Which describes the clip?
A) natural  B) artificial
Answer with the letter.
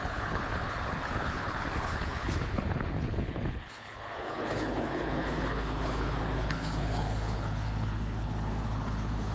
B